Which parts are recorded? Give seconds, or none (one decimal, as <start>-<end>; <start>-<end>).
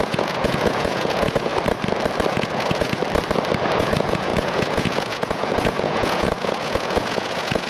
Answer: 1.5-2.3; 3.0-3.8